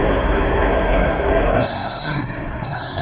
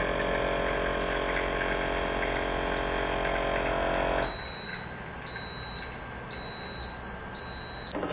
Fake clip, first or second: first